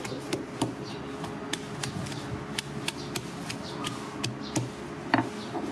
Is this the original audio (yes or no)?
yes